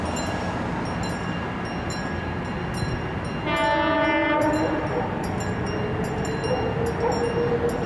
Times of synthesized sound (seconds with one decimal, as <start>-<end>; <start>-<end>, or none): 4.2-5.7